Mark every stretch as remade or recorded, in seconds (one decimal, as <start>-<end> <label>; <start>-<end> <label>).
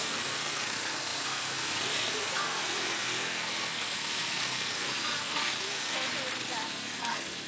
0.0-6.1 remade; 6.1-6.6 recorded; 6.6-7.5 remade